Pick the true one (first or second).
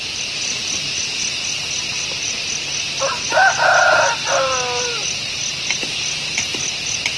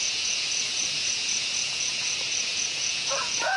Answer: first